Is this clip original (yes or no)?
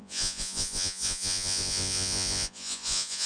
no